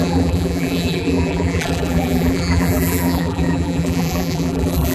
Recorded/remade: remade